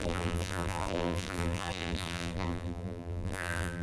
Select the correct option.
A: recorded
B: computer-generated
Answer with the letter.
B